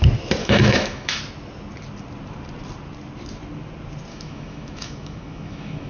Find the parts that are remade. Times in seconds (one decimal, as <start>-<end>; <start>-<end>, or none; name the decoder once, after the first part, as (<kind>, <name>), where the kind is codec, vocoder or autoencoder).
0.4-1.2 (autoencoder, DAC-VAE); 4.1-5.9